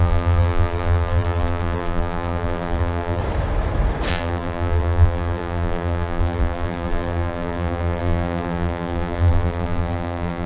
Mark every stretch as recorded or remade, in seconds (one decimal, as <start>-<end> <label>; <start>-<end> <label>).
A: 0.0-3.2 remade; 3.2-4.1 recorded; 4.1-10.5 remade